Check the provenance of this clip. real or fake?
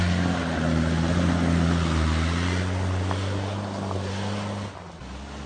real